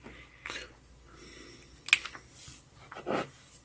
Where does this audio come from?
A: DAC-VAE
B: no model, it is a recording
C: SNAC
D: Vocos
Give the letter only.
B